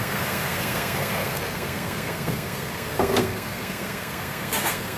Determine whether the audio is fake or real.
fake